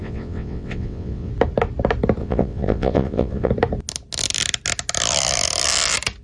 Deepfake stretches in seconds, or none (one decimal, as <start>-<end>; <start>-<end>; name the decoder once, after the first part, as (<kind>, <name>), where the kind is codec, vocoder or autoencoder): 0.0-1.3 (vocoder, WaveNeXt); 2.2-3.5